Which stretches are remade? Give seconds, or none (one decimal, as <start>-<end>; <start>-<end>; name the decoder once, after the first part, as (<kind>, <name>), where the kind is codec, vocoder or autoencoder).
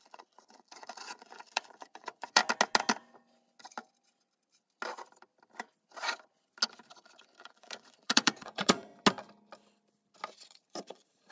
0.0-2.4 (vocoder, Vocos); 7.4-8.9; 10.5-11.3